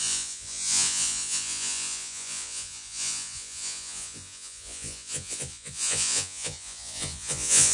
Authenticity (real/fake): fake